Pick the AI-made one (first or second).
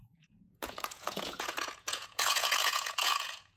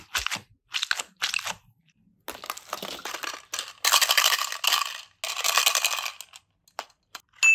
first